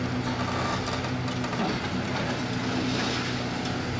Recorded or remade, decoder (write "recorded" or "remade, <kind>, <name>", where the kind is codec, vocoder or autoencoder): recorded